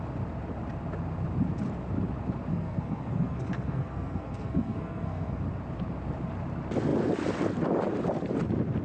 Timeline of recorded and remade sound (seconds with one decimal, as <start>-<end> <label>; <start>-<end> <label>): 0.0-2.5 recorded; 2.5-5.4 remade; 5.4-8.8 recorded